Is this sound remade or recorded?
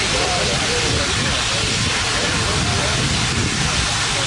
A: remade